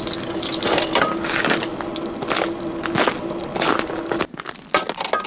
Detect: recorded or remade recorded